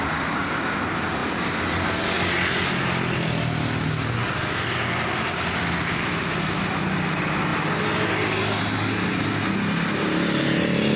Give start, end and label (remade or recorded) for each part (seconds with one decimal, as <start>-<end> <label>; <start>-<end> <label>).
0.0-11.0 recorded